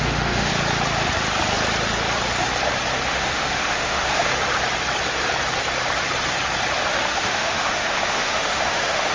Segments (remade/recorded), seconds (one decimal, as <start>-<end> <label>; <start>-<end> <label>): 0.0-0.5 remade; 0.5-3.1 recorded; 3.1-4.3 remade; 4.3-6.9 recorded; 6.9-9.1 remade